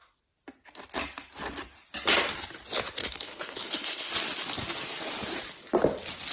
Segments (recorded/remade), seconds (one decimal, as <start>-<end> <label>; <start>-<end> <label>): 0.0-3.0 recorded; 3.0-4.1 remade; 4.1-6.3 recorded